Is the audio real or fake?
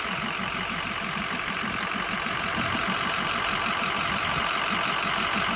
fake